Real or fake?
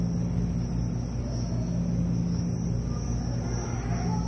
real